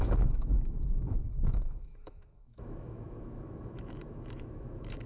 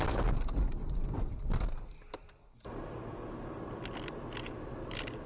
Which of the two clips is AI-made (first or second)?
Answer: first